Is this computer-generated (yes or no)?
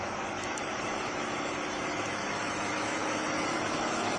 yes